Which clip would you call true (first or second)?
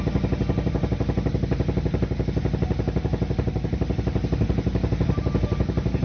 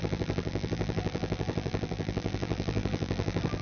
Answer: first